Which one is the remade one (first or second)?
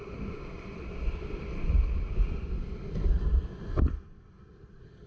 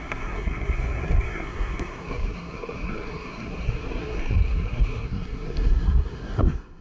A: second